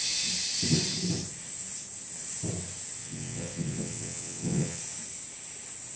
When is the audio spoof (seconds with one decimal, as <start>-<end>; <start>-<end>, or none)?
3.0-4.8